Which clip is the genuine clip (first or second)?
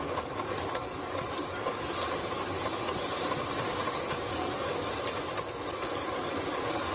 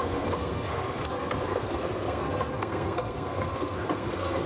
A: first